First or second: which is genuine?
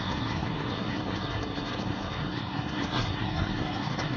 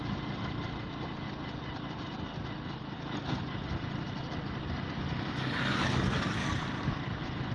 second